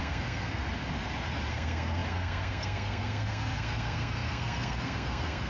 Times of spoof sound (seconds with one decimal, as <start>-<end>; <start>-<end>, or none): 0.0-0.6; 1.5-5.5